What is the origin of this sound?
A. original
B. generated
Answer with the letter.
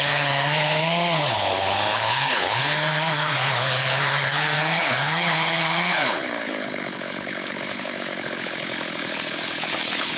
B